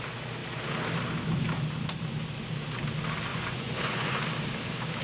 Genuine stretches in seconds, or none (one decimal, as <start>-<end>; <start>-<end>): 0.0-3.3; 4.2-5.0